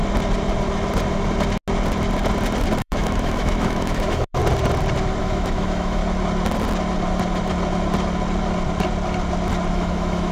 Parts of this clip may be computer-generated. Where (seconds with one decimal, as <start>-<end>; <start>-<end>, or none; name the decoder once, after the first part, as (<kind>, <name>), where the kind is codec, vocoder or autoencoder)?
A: 2.8-4.4 (autoencoder, DAC-VAE); 5.2-6.0; 9.7-10.3